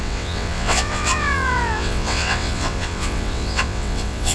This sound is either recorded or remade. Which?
remade